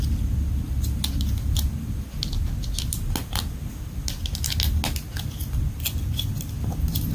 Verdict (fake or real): real